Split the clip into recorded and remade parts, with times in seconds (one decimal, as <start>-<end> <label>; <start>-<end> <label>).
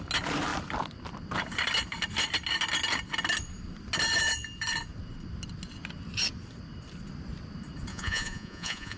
0.0-7.9 recorded; 7.9-9.0 remade